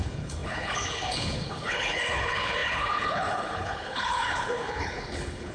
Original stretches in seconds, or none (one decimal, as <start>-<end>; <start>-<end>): none